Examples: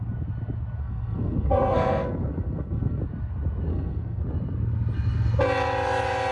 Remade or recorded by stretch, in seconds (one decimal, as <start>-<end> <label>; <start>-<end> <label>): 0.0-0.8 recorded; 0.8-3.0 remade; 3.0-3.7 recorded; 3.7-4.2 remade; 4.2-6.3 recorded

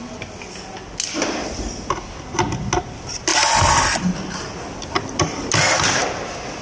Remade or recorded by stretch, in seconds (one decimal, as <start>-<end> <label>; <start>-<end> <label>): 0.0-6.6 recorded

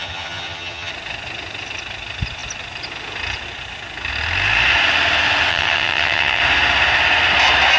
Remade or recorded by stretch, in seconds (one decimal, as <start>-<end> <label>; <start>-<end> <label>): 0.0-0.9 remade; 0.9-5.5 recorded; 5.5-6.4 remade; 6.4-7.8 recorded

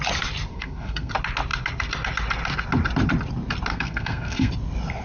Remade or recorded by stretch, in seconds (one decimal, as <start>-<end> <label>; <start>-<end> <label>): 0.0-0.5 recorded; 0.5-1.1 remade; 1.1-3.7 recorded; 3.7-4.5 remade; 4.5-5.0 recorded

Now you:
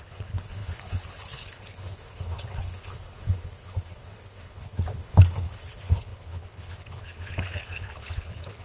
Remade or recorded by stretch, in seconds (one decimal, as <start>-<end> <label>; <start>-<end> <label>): 0.0-8.6 remade

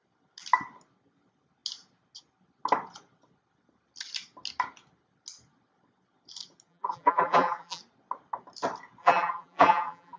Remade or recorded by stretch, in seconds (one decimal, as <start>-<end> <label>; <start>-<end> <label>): 0.0-6.7 recorded; 6.7-7.8 remade; 7.8-9.0 recorded; 9.0-10.2 remade